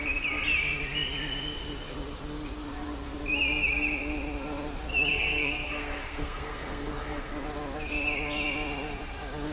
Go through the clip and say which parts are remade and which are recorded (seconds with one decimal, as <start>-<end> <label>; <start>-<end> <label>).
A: 0.0-5.1 recorded; 5.1-7.3 remade; 7.3-9.5 recorded